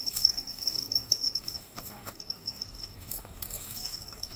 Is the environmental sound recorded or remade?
remade